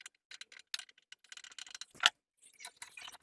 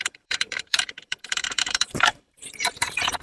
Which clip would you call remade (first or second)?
second